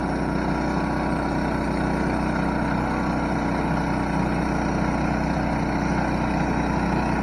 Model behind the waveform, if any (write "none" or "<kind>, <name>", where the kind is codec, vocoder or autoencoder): none